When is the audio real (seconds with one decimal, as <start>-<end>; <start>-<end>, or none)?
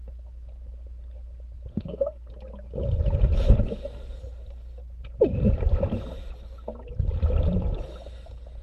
0.0-1.7; 2.3-8.6